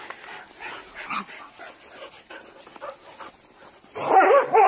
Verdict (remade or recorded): recorded